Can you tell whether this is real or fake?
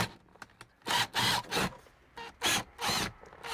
real